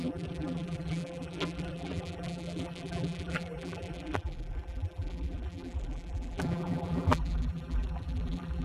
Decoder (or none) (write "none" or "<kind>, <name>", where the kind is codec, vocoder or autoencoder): vocoder, BigVGAN v2